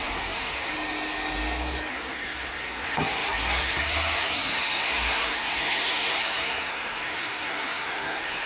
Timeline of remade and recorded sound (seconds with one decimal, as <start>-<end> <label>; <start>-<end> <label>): 0.0-0.7 remade; 0.7-1.9 recorded; 1.9-8.5 remade